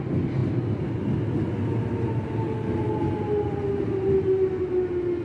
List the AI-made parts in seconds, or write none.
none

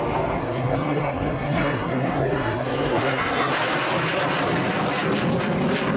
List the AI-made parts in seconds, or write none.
0.4-3.5

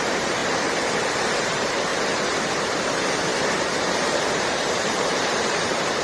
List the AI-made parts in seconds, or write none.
0.0-0.4; 1.2-1.9; 2.4-6.0